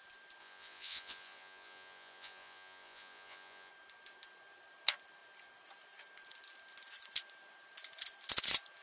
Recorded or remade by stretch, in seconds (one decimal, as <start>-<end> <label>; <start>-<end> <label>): 0.0-0.4 recorded; 0.4-3.7 remade; 3.7-8.8 recorded